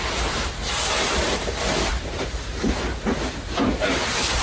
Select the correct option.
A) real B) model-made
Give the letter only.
A